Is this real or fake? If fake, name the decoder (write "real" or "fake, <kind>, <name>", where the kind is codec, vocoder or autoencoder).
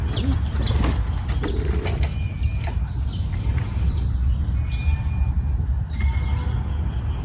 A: real